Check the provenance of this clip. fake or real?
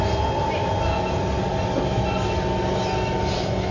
real